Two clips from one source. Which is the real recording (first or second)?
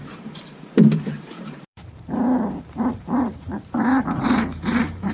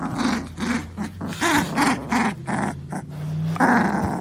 second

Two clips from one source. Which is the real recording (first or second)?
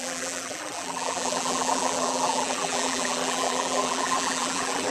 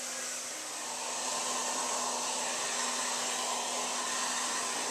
second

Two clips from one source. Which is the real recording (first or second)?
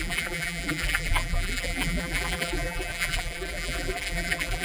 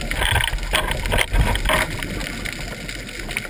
second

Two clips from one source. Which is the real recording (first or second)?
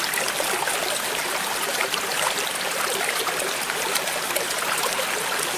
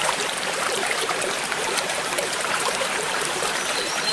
first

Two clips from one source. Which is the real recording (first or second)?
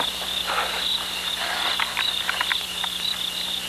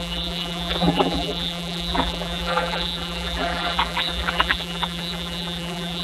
first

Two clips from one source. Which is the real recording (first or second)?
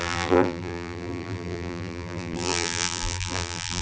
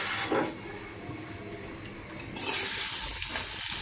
second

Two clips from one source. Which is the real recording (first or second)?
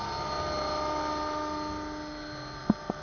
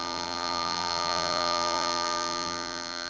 first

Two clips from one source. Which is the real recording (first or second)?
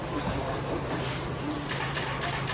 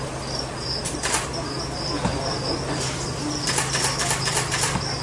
second